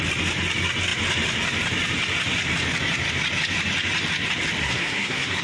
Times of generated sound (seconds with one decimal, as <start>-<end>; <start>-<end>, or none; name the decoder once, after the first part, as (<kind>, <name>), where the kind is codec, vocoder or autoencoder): 4.6-5.4 (codec, SNAC)